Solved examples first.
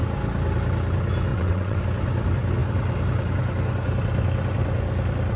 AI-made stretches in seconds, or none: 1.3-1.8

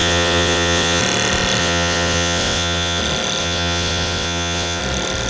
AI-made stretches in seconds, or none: 0.0-1.0; 1.6-3.0; 3.4-4.8

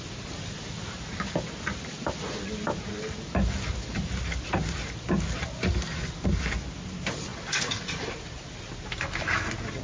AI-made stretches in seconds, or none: none